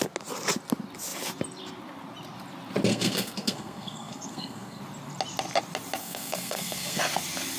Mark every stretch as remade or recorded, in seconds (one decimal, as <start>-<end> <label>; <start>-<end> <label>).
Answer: 0.0-2.9 recorded; 2.9-4.8 remade; 4.8-6.0 recorded; 6.0-7.0 remade; 7.0-7.6 recorded